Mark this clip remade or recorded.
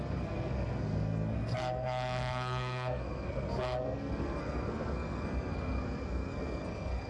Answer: remade